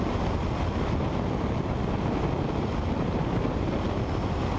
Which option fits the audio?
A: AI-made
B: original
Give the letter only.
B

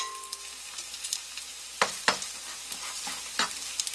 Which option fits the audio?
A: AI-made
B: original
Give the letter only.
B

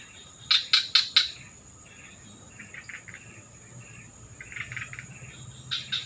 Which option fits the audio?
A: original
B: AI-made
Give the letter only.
A